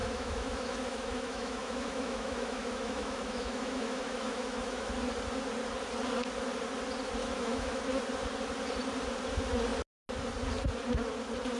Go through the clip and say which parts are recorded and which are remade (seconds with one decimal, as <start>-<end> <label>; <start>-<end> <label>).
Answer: 0.0-4.9 remade; 4.9-7.2 recorded; 7.2-7.8 remade; 7.8-11.6 recorded

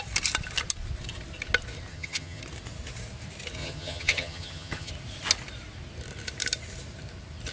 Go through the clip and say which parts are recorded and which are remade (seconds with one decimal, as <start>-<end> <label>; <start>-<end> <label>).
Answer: 0.0-1.9 recorded; 1.9-2.4 remade; 2.4-3.6 recorded; 3.6-4.9 remade; 4.9-7.5 recorded